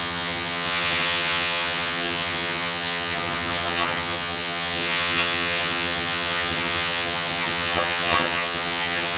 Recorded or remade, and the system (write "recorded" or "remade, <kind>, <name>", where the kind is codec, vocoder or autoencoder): remade, vocoder, HiFi-GAN